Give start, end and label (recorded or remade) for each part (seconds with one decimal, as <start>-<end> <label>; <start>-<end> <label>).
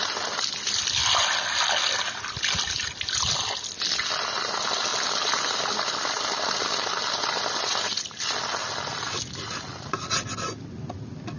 0.0-11.4 recorded